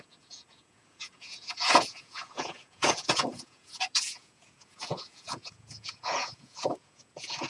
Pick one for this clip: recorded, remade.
remade